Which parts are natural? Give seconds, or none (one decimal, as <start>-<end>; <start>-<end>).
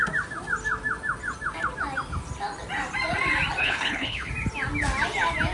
0.0-3.6; 4.3-5.5